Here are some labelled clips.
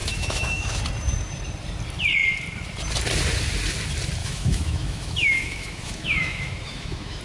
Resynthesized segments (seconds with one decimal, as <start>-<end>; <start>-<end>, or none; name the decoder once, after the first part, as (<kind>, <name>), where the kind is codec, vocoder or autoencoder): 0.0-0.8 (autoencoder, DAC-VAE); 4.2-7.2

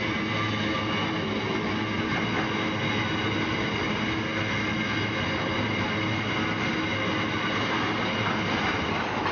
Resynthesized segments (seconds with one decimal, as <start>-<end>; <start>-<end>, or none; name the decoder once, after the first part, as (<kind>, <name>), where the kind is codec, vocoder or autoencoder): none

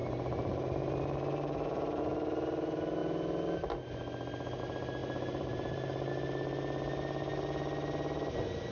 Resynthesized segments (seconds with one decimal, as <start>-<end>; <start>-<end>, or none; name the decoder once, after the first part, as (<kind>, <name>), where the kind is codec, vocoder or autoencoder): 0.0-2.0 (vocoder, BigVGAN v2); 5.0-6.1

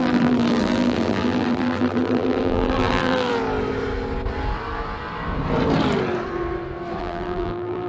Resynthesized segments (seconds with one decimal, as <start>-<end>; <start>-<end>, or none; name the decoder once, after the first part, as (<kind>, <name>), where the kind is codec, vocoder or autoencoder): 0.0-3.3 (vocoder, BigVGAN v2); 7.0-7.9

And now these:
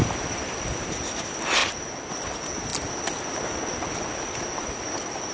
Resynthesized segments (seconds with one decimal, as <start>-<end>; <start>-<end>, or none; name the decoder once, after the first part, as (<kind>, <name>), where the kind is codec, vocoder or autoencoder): none

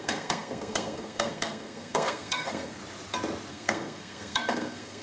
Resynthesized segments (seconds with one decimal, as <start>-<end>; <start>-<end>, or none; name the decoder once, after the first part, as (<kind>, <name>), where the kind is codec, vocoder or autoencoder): 0.0-2.8 (codec, SNAC); 3.5-5.0

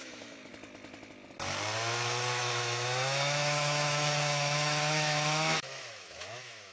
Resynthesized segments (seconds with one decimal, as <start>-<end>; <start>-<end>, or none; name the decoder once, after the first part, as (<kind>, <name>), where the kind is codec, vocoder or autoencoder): 0.0-0.5 (autoencoder, DAC-VAE); 2.3-6.7

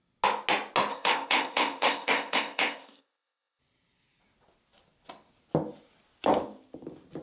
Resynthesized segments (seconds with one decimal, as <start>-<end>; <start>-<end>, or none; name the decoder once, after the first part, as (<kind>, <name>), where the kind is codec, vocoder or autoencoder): 0.9-3.6 (codec, ZipCodec)